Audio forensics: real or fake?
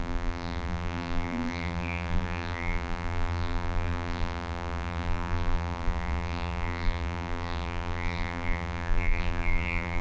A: fake